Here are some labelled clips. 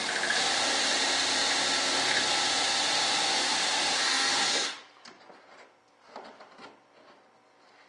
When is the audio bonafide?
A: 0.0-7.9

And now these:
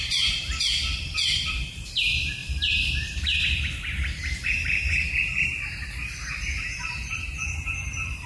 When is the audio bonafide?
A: 0.4-1.3

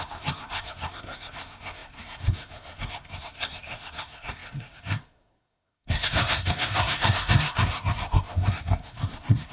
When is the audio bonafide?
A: none

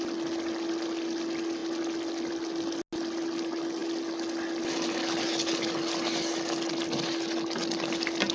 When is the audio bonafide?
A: 0.0-8.3